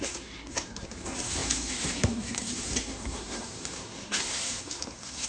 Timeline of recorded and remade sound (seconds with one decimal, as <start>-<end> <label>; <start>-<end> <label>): 0.0-5.3 remade